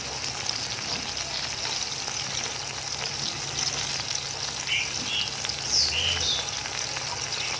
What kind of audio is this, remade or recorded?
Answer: recorded